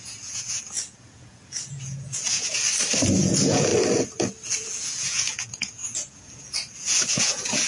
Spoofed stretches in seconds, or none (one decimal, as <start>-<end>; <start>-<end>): 0.0-2.6; 3.2-3.7; 4.5-7.7